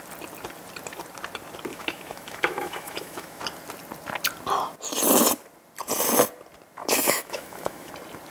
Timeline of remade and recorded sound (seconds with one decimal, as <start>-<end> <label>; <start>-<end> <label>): 0.0-1.7 recorded; 1.7-3.4 remade; 3.4-6.8 recorded; 6.8-7.9 remade; 7.9-8.3 recorded